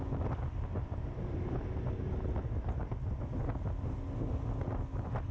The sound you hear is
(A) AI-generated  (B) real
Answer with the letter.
B